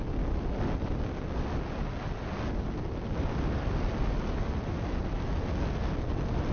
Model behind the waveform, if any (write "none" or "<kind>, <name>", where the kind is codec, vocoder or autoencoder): none